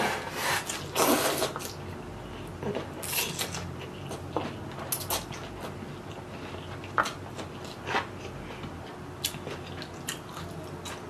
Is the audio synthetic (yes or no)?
no